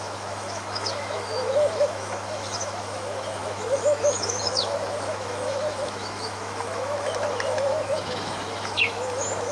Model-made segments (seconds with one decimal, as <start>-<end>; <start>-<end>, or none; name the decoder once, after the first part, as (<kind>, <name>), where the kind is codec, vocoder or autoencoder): 0.0-9.5 (autoencoder, DAC-VAE)